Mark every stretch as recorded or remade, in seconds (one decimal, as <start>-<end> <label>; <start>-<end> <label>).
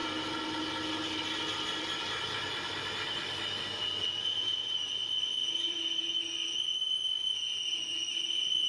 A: 0.0-4.3 recorded; 4.3-4.9 remade; 4.9-5.4 recorded; 5.4-6.0 remade; 6.0-8.7 recorded